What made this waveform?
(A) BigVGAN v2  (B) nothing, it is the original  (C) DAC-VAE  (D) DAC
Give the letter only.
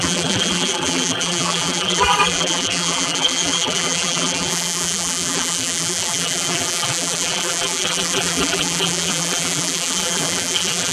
A